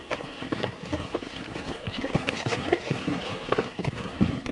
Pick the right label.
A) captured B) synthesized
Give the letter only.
B